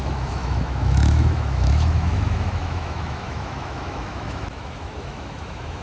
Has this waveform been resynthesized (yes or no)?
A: yes